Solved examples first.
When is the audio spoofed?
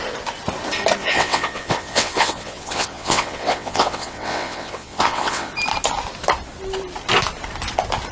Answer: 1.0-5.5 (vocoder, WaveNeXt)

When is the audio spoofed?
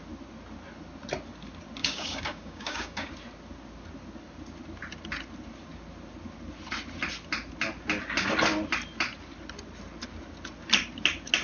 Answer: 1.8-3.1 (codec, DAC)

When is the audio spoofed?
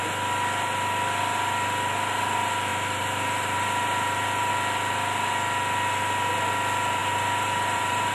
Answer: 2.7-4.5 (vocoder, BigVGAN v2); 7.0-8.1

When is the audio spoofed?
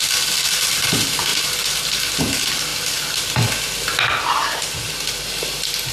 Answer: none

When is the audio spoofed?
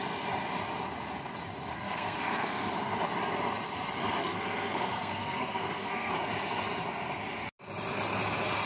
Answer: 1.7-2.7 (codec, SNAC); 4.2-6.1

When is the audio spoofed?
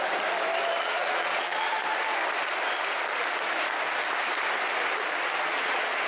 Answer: 0.8-1.8 (vocoder, Vocos); 5.4-6.1